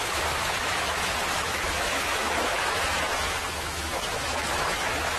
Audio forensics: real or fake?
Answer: fake